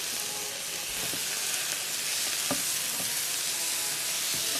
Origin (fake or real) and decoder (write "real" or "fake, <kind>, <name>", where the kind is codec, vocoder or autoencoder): real